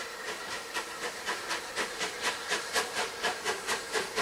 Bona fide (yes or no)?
no